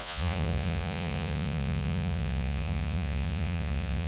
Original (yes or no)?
no